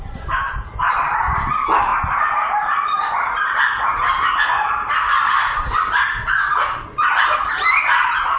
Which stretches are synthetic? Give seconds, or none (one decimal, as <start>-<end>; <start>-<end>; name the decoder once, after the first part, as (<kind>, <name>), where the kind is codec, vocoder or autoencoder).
none